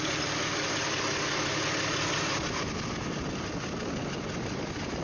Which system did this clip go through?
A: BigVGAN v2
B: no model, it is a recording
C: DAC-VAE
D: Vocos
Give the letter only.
B